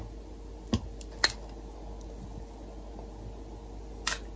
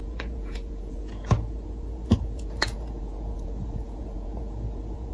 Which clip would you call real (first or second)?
first